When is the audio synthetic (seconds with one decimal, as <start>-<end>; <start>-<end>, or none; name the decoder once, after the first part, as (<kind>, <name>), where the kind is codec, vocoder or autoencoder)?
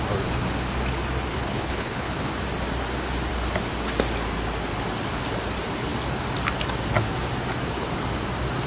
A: 1.3-2.3 (codec, HILCodec)